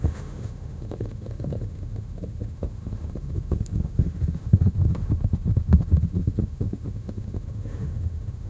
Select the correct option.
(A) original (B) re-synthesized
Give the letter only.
B